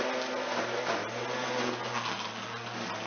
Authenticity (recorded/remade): recorded